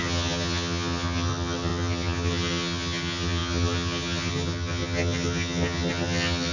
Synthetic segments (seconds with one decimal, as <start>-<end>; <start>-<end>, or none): 0.0-6.5